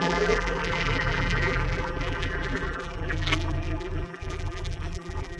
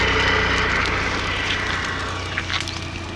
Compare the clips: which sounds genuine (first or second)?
second